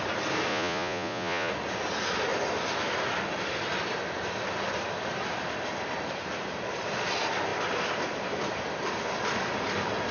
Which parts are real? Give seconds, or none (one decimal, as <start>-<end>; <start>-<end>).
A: 0.0-0.5; 1.5-10.1

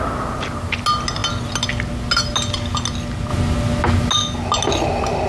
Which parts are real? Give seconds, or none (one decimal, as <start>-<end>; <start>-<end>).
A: 0.0-5.3

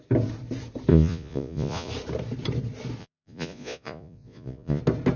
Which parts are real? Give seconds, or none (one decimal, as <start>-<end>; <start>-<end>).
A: 0.0-0.9; 1.9-3.0; 4.8-5.2